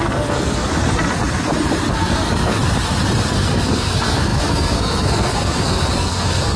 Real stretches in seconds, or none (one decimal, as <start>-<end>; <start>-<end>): 0.7-1.9; 2.6-3.3